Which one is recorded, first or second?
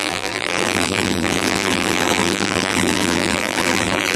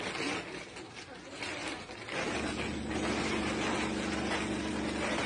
second